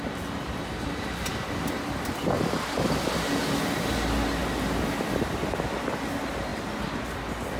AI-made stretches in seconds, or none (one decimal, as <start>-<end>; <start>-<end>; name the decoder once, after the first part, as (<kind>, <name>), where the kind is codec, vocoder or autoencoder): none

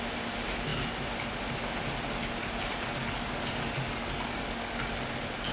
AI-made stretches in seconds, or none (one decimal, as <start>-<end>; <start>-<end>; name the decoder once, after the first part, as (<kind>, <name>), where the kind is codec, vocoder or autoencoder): 3.0-4.9 (codec, DAC)

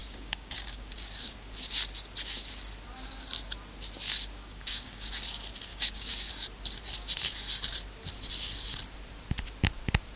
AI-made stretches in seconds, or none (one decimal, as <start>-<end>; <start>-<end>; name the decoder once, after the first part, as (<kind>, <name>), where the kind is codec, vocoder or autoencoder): 0.0-1.5 (codec, DAC); 4.4-5.1; 5.7-6.3

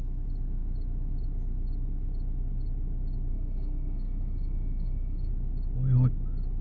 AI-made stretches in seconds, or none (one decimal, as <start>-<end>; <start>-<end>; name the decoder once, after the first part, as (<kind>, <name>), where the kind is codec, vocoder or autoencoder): 3.3-5.3 (codec, SNAC)